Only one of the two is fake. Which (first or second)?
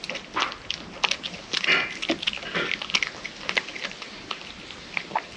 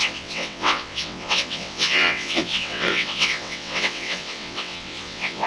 second